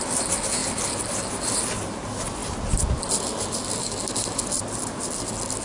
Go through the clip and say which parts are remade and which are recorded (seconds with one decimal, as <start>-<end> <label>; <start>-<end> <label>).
0.0-5.6 recorded